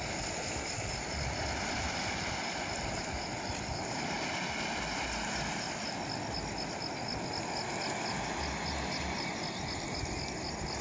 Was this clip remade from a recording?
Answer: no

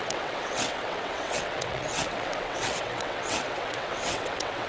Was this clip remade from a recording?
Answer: yes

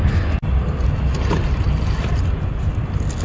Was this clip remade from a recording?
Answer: no